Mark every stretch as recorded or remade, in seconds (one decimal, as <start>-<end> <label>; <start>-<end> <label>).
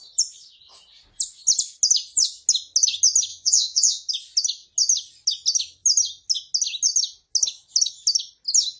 0.0-3.3 recorded; 3.3-4.1 remade; 4.1-8.8 recorded